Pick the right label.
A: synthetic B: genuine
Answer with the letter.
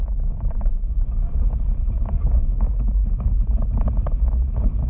A